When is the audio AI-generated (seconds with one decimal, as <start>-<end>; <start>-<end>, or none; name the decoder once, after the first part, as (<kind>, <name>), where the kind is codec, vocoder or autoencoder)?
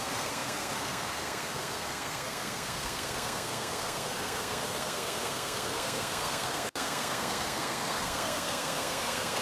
0.0-9.4 (codec, SNAC)